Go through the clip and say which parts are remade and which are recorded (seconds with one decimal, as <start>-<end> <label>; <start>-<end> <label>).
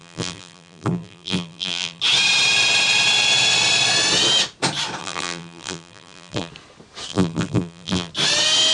0.0-2.0 remade; 2.0-5.0 recorded; 5.0-6.5 remade; 6.5-7.1 recorded; 7.1-8.1 remade; 8.1-8.7 recorded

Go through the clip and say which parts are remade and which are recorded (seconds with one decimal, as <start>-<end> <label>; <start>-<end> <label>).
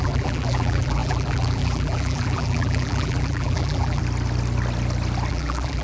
0.0-4.0 remade; 4.0-5.3 recorded; 5.3-5.8 remade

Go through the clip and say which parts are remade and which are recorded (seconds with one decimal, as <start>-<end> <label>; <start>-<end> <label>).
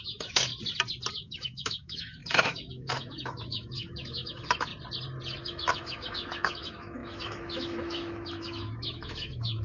0.0-0.5 remade; 0.5-1.1 recorded; 1.1-4.7 remade; 4.7-5.4 recorded; 5.4-9.6 remade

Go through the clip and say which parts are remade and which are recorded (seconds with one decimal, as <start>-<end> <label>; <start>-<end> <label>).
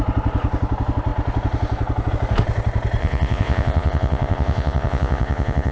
0.0-3.0 recorded; 3.0-5.7 remade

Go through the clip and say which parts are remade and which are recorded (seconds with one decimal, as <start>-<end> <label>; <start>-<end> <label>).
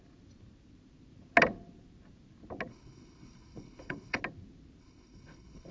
0.0-2.7 recorded; 2.7-4.2 remade; 4.2-4.8 recorded; 4.8-5.7 remade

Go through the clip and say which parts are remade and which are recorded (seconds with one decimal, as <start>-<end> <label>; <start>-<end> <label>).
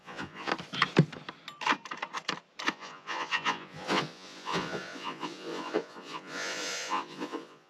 0.0-0.5 remade; 0.5-2.7 recorded; 2.7-7.7 remade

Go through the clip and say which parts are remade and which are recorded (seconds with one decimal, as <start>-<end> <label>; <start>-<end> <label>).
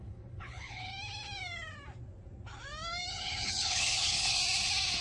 0.0-0.9 remade; 0.9-3.1 recorded; 3.1-4.4 remade; 4.4-5.0 recorded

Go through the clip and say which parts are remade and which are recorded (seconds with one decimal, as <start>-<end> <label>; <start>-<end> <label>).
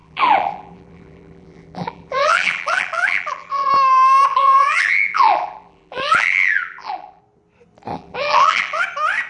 0.0-3.7 remade; 3.7-4.3 recorded; 4.3-7.2 remade; 7.2-7.9 recorded; 7.9-8.8 remade; 8.8-9.3 recorded